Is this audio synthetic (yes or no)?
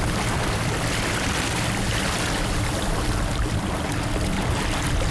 no